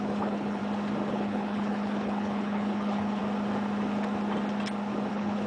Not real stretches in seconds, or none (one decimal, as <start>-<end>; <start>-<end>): 0.0-0.6; 1.1-3.2; 5.1-5.5